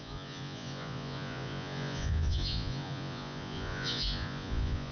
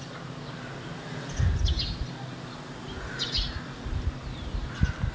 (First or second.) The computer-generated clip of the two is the first